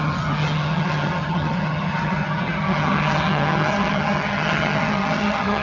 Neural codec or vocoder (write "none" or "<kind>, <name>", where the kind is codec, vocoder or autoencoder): vocoder, HiFi-GAN